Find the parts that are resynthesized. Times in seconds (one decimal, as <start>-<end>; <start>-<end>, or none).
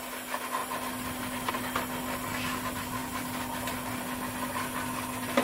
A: 0.6-1.5; 3.0-4.0